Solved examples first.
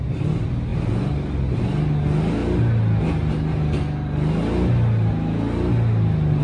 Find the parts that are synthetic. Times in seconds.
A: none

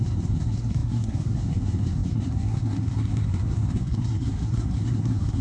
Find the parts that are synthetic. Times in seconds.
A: 0.0-5.4 (codec, SNAC)

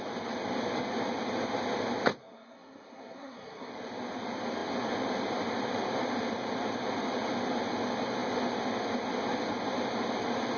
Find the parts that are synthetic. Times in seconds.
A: 2.2-3.7 (codec, SNAC)

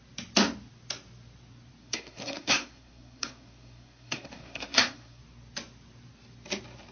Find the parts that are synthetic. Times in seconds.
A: 1.8-5.2 (codec, SNAC)

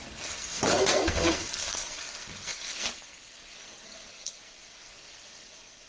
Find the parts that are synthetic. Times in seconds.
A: 0.0-5.9 (codec, SNAC)

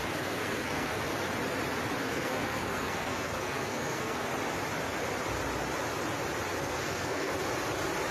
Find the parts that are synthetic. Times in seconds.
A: 0.0-1.1 (codec, SNAC); 2.0-4.3; 6.6-7.3

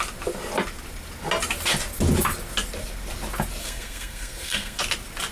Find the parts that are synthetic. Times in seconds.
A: 3.6-4.8 (codec, SNAC)